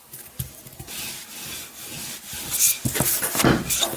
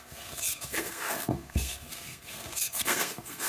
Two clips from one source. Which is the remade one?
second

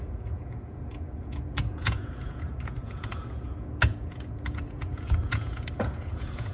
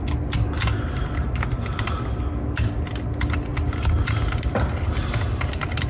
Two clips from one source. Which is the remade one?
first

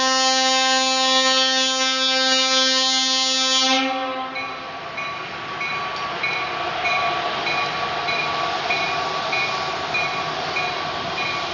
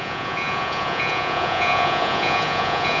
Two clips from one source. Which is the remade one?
second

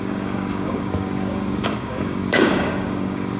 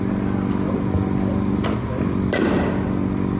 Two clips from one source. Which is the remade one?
first